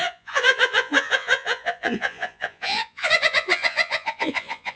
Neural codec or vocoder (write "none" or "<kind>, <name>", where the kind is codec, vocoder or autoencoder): vocoder, Vocos